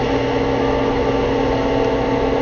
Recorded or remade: recorded